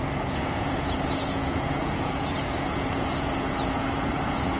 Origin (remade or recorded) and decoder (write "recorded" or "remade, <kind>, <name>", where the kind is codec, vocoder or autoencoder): remade, vocoder, Vocos